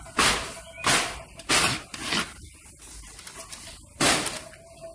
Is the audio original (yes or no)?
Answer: yes